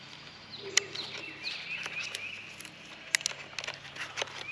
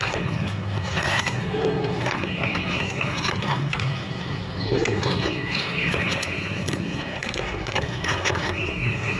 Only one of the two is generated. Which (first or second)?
second